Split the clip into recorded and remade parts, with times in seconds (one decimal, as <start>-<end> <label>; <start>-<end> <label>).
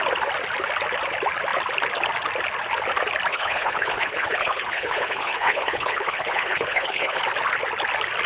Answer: 0.0-3.3 recorded; 3.3-7.2 remade; 7.2-8.3 recorded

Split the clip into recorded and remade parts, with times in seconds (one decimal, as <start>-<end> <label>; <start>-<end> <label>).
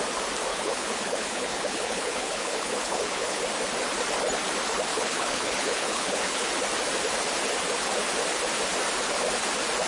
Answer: 0.0-0.5 recorded; 0.5-3.4 remade; 3.4-4.9 recorded; 4.9-6.5 remade; 6.5-9.9 recorded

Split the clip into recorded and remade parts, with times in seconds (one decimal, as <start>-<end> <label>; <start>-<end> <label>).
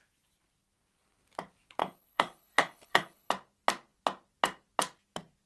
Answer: 0.0-1.8 recorded; 1.8-3.3 remade; 3.3-5.5 recorded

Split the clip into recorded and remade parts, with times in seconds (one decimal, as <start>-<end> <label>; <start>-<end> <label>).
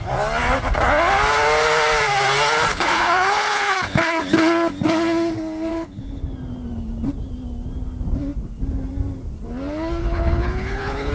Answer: 0.0-2.7 recorded; 2.7-4.2 remade; 4.2-5.7 recorded; 5.7-6.2 remade; 6.2-10.0 recorded; 10.0-11.1 remade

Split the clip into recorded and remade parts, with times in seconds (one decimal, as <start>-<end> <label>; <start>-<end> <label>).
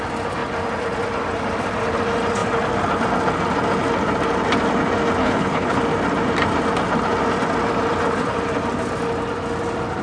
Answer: 0.0-5.2 recorded; 5.2-5.8 remade; 5.8-10.0 recorded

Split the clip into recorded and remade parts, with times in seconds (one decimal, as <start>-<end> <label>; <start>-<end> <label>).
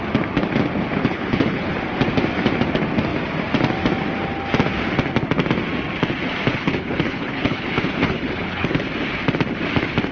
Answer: 0.0-1.0 recorded; 1.0-1.7 remade; 1.7-6.5 recorded; 6.5-8.8 remade; 8.8-10.1 recorded